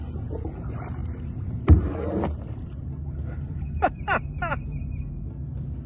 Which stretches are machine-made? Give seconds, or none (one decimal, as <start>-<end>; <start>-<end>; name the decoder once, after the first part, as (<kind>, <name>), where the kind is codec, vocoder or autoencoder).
1.0-4.5 (vocoder, BigVGAN v2)